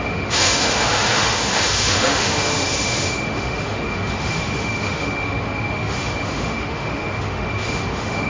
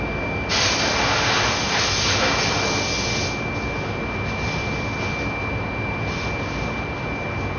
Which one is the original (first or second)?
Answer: second